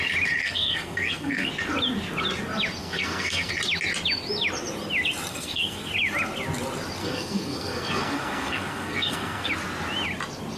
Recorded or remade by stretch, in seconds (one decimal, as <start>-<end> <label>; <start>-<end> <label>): 0.0-0.4 recorded; 0.4-1.5 remade; 1.5-2.8 recorded; 2.8-3.5 remade; 3.5-5.3 recorded; 5.3-5.9 remade; 5.9-7.0 recorded; 7.0-9.5 remade; 9.5-10.6 recorded

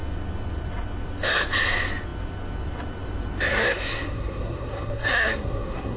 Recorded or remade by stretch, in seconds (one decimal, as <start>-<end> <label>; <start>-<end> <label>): 0.0-3.5 recorded; 3.5-6.0 remade

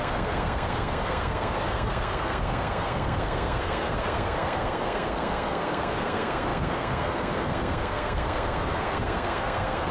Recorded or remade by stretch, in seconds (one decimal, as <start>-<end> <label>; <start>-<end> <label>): 0.0-9.9 remade

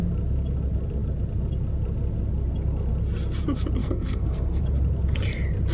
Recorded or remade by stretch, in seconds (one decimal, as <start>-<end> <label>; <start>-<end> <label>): 0.0-3.8 recorded; 3.8-4.6 remade; 4.6-5.7 recorded